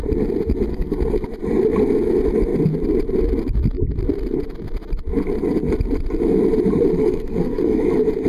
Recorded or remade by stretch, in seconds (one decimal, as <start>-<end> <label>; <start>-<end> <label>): 0.0-0.7 recorded; 0.7-1.2 remade; 1.2-7.0 recorded; 7.0-7.8 remade; 7.8-8.3 recorded